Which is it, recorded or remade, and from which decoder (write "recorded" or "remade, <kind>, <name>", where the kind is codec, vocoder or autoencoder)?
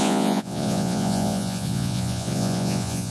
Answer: remade, vocoder, Vocos